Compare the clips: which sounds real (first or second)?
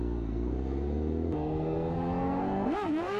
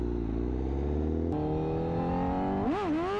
second